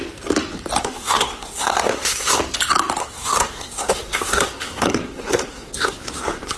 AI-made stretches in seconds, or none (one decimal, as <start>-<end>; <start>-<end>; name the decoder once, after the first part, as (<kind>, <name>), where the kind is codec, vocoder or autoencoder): 0.8-2.4 (codec, SNAC); 3.0-6.6